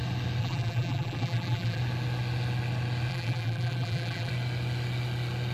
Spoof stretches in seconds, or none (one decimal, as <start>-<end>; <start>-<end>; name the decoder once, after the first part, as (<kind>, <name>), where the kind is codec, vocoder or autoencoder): 0.4-1.8 (vocoder, BigVGAN v2); 3.1-4.3